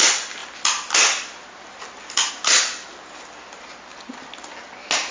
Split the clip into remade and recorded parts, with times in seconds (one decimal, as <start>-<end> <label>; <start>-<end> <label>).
0.0-5.1 recorded

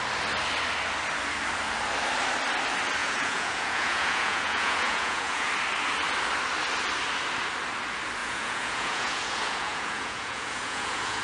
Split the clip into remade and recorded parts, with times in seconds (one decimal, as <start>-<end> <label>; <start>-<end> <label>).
0.0-3.0 recorded; 3.0-5.5 remade; 5.5-8.2 recorded; 8.2-11.2 remade

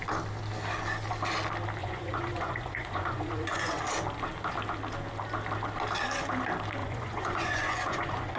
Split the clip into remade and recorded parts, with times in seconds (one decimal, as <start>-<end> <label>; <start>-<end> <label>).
0.0-1.8 recorded; 1.8-3.8 remade; 3.8-6.8 recorded; 6.8-8.4 remade

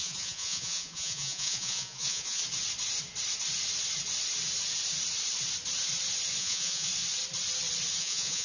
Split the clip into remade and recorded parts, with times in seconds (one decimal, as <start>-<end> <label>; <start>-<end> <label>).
0.0-2.4 remade; 2.4-6.4 recorded; 6.4-6.9 remade; 6.9-8.0 recorded; 8.0-8.4 remade

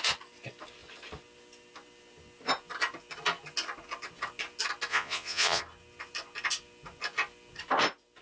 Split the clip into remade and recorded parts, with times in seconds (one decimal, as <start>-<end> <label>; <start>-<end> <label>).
0.0-4.9 recorded; 4.9-5.6 remade; 5.6-8.2 recorded

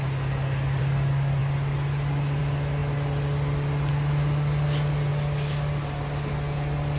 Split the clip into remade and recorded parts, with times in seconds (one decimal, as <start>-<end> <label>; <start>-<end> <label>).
0.0-7.0 recorded

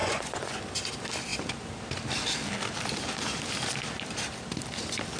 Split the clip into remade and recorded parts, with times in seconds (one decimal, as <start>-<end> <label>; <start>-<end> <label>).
0.0-0.6 remade; 0.6-5.2 recorded